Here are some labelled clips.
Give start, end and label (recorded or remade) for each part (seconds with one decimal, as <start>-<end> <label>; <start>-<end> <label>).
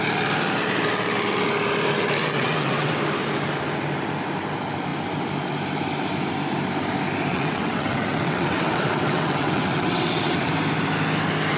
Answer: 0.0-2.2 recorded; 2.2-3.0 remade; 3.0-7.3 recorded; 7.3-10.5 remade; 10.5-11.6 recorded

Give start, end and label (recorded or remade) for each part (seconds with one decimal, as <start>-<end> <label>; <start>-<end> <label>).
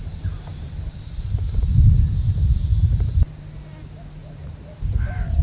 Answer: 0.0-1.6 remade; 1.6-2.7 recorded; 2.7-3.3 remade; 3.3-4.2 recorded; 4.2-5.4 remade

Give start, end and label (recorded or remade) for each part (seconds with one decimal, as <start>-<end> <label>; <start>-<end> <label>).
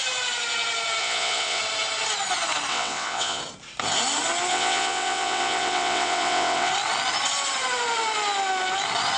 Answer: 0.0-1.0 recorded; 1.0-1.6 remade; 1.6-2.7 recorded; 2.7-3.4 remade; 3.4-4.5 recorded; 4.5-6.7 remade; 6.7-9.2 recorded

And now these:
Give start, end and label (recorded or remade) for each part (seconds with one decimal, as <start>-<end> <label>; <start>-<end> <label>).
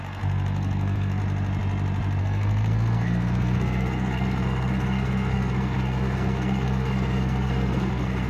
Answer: 0.0-1.2 remade; 1.2-2.2 recorded; 2.2-8.3 remade